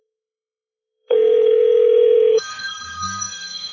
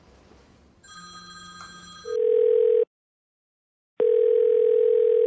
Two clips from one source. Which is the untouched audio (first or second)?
second